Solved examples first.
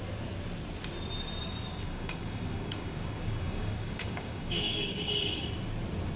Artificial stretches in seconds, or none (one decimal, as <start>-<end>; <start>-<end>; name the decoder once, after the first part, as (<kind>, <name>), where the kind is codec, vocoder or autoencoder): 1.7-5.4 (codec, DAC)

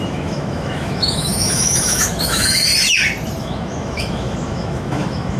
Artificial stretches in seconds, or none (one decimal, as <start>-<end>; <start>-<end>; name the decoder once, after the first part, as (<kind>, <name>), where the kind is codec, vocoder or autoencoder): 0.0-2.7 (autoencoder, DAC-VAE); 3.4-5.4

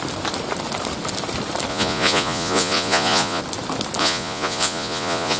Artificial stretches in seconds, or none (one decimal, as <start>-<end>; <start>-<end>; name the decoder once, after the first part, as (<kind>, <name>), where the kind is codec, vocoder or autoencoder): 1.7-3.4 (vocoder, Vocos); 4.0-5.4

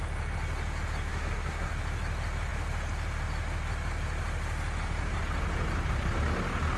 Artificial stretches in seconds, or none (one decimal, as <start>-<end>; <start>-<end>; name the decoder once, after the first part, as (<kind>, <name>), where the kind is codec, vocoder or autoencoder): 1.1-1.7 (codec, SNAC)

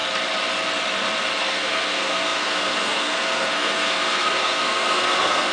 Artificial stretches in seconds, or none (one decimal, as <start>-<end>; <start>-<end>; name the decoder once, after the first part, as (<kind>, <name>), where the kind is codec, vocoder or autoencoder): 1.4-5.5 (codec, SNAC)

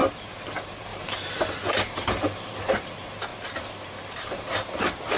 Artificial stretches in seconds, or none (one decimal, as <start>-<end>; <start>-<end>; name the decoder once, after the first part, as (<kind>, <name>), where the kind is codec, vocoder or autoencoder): 0.0-5.2 (vocoder, BigVGAN v2)

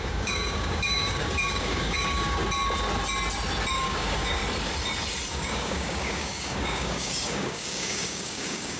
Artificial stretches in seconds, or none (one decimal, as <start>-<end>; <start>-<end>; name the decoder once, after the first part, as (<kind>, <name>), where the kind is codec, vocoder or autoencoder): 0.0-2.4 (codec, DAC); 3.7-4.4; 5.3-8.8